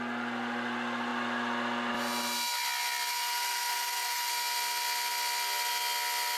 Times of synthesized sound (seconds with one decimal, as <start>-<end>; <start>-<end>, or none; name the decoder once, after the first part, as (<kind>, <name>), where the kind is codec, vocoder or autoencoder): 3.1-4.3 (codec, SNAC)

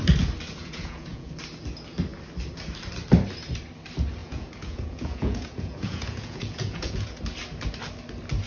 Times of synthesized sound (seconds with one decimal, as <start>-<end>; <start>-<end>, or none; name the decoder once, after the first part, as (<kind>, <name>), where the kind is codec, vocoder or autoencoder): 0.6-1.3 (vocoder, Vocos); 4.2-7.2